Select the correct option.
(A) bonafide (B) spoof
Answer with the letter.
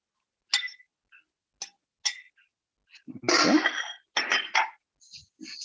A